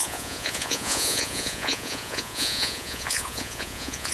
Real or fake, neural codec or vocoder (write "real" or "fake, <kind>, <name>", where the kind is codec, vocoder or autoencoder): fake, vocoder, Vocos